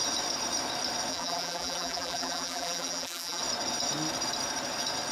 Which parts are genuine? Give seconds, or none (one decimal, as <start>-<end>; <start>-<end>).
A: 0.0-1.1; 3.4-5.1